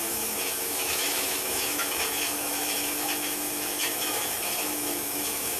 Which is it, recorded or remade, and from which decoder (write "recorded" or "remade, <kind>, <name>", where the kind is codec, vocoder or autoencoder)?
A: remade, autoencoder, DAC-VAE